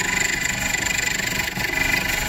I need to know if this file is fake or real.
real